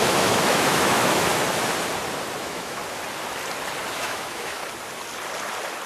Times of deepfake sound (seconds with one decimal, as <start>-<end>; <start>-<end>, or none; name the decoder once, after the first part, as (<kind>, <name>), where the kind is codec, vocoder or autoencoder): 0.0-1.3 (autoencoder, DAC-VAE); 2.4-2.8; 3.9-4.6